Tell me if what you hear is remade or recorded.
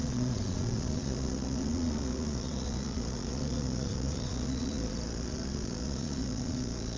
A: remade